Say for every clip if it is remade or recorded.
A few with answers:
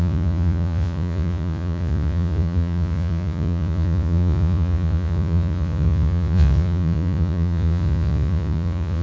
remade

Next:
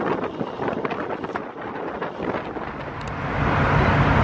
recorded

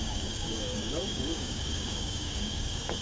remade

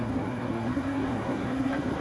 remade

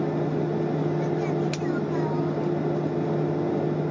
recorded